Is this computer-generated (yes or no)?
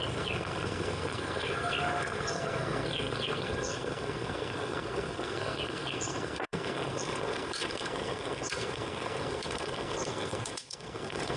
yes